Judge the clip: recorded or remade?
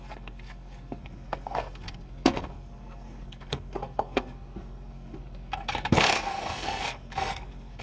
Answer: remade